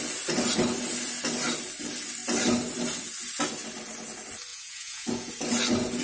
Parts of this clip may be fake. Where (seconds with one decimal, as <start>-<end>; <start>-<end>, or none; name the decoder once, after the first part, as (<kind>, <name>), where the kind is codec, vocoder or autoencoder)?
4.5-5.3 (vocoder, Vocos)

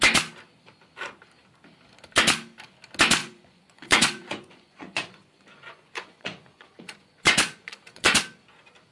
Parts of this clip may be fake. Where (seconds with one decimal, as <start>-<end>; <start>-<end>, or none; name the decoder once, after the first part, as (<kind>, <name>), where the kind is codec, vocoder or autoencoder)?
3.2-8.2 (vocoder, Vocos)